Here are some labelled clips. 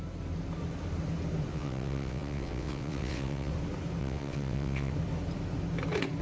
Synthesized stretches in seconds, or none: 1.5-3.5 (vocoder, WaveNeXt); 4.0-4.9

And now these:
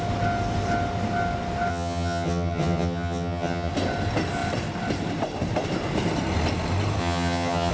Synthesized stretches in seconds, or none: 1.7-3.7 (vocoder, HiFi-GAN); 7.0-7.7

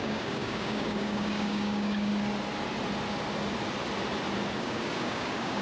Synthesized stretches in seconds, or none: 0.0-2.1 (codec, DAC); 4.6-5.6